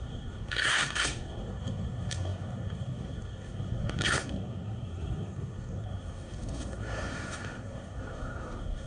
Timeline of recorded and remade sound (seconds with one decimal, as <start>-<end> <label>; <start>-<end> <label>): 0.0-8.9 remade

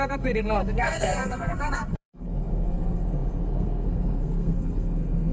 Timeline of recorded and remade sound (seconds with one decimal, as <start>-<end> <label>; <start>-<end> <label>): 0.0-5.3 remade

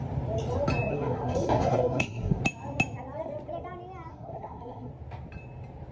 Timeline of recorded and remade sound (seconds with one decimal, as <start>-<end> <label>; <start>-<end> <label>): 0.0-0.9 recorded; 0.9-2.4 remade; 2.4-4.1 recorded; 4.1-4.9 remade; 4.9-5.9 recorded

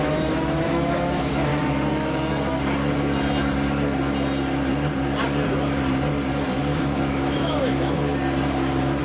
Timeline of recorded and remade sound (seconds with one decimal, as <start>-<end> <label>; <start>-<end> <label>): 0.0-1.5 remade; 1.5-6.6 recorded; 6.6-8.1 remade; 8.1-9.0 recorded

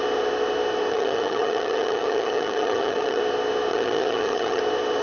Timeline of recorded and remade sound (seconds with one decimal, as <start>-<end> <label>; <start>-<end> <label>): 0.0-0.9 recorded; 0.9-3.2 remade; 3.2-3.7 recorded; 3.7-4.6 remade; 4.6-5.0 recorded

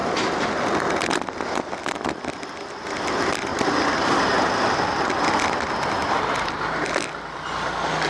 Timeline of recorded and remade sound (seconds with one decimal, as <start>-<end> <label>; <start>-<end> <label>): 0.0-3.5 recorded; 3.5-5.5 remade; 5.5-6.0 recorded; 6.0-7.1 remade; 7.1-8.1 recorded

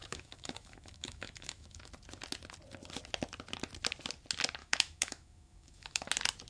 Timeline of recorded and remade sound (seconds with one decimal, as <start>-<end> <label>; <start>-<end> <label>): 0.0-1.9 remade; 1.9-4.6 recorded; 4.6-6.1 remade; 6.1-6.5 recorded

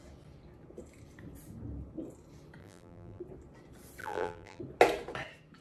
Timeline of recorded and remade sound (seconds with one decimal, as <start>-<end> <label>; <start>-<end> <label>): 0.0-2.6 recorded; 2.6-3.2 remade; 3.2-4.0 recorded; 4.0-4.6 remade; 4.6-5.6 recorded